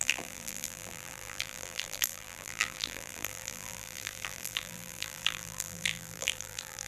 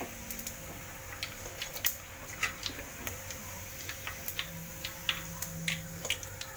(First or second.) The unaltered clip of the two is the second